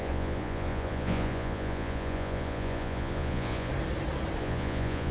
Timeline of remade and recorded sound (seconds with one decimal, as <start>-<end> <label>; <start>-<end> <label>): 0.0-3.7 remade; 3.7-4.4 recorded; 4.4-5.1 remade